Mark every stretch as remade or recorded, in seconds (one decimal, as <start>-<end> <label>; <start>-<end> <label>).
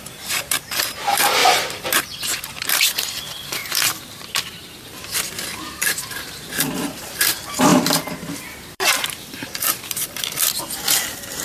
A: 0.0-3.6 remade; 3.6-4.3 recorded; 4.3-7.7 remade; 7.7-8.4 recorded; 8.4-11.4 remade